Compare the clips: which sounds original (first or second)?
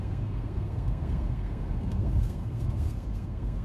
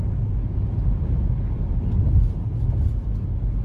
second